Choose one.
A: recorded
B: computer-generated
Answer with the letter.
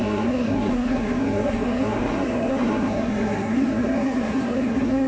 B